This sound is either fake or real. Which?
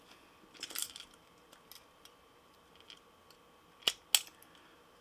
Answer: real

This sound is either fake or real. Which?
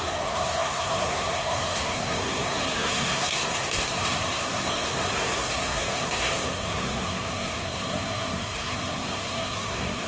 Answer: fake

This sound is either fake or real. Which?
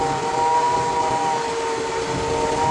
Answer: real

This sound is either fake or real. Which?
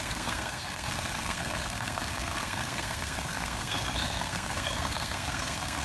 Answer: fake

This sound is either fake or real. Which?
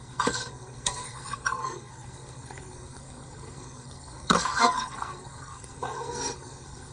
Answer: fake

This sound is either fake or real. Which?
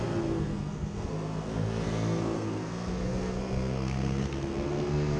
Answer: fake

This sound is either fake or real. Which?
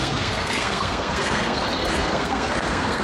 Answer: fake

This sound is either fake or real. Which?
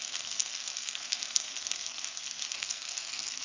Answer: fake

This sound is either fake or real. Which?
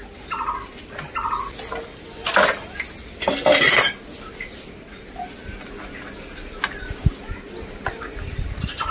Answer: real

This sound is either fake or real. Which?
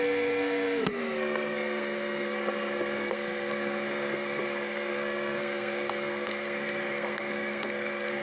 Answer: fake